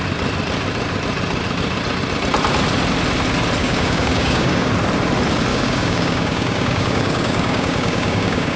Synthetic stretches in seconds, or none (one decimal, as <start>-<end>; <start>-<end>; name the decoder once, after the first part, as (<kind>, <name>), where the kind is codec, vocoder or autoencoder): 3.6-4.7 (codec, DAC); 5.5-8.6